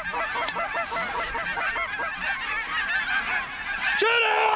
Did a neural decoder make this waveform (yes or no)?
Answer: no